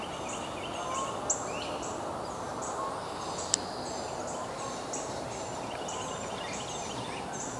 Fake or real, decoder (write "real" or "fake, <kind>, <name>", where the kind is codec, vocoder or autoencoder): real